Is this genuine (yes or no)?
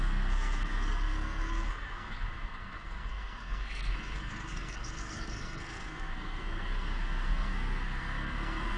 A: no